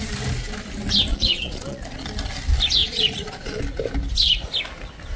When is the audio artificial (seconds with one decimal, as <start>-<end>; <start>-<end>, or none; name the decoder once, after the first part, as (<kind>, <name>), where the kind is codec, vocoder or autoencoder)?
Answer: 1.1-2.1 (vocoder, Vocos); 2.8-3.6